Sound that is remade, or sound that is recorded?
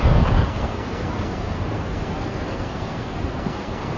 remade